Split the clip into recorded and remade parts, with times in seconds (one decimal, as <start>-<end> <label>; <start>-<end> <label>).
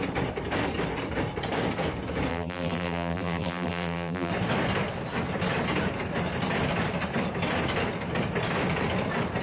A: 0.0-2.3 recorded; 2.3-4.3 remade; 4.3-9.4 recorded